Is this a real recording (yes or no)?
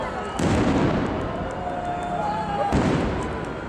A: yes